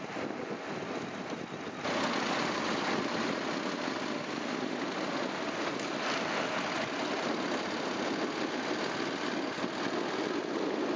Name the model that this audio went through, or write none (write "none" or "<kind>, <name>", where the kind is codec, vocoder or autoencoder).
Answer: none